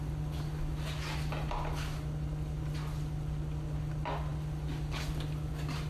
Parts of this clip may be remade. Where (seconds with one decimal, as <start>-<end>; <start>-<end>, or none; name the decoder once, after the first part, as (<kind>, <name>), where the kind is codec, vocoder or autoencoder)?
none